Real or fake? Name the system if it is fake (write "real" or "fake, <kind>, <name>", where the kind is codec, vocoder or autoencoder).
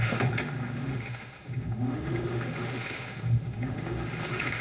fake, autoencoder, DAC-VAE